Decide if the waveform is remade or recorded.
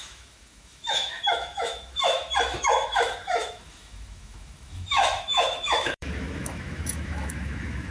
remade